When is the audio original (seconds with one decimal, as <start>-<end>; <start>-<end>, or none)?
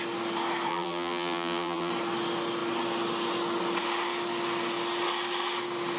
0.0-0.7; 1.9-6.0